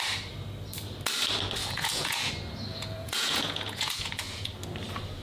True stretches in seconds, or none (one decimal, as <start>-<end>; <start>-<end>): 0.0-1.6; 2.3-2.7; 4.5-5.2